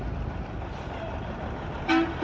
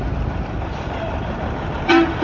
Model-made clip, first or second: second